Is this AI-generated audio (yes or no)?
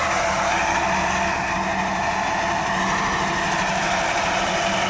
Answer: no